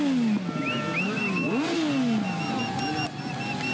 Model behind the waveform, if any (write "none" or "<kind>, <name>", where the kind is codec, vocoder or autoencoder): none